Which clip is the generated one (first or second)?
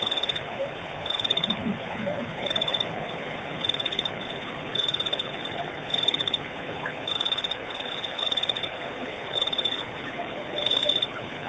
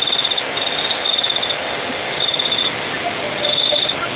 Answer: first